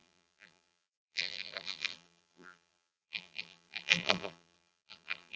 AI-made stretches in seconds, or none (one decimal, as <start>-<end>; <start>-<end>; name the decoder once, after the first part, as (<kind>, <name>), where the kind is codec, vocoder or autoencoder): 0.0-5.4 (vocoder, BigVGAN v2)